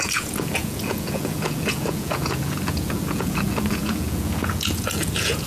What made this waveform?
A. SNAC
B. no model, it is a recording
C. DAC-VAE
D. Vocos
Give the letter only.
D